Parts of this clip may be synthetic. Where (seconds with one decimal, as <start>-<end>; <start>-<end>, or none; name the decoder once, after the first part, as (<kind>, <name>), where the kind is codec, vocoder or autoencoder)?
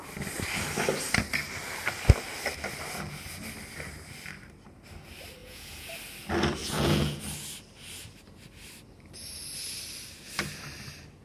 5.4-5.9 (vocoder, Vocos); 6.6-7.2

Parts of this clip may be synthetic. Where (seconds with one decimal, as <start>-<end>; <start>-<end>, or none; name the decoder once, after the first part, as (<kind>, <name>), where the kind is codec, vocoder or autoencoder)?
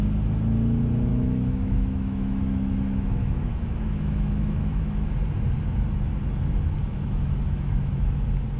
1.1-5.1 (autoencoder, DAC-VAE); 6.8-8.2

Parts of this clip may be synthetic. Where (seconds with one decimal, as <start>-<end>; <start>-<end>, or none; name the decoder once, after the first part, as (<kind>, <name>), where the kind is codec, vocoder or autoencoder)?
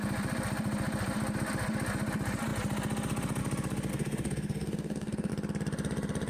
3.9-5.3 (codec, SNAC)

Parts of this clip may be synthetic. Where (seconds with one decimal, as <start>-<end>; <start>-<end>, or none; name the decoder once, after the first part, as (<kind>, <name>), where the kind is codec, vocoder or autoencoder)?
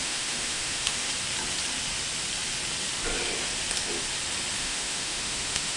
0.0-1.1 (autoencoder, DAC-VAE); 4.6-5.8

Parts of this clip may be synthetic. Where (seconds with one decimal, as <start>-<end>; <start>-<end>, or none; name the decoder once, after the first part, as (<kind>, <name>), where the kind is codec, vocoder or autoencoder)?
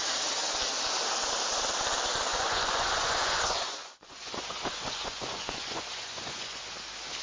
2.3-6.6 (vocoder, Vocos)